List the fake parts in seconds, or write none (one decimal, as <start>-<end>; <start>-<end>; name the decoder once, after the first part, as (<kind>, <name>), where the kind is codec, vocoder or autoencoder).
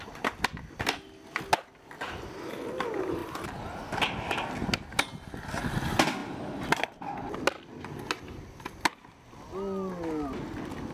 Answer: none